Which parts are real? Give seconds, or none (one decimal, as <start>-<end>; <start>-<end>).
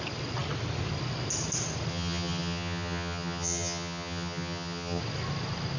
0.0-1.9; 5.0-5.8